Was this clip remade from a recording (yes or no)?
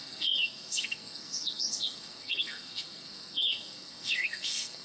yes